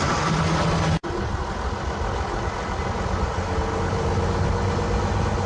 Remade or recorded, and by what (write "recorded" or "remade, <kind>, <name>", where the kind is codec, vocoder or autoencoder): recorded